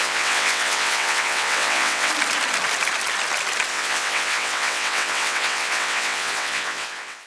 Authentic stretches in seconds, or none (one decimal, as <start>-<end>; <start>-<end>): 2.1-3.7